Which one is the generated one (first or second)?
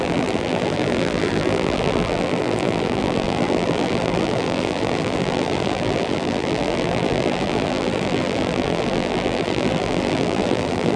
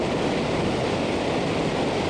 first